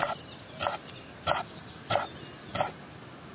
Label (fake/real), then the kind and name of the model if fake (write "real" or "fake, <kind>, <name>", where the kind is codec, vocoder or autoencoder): real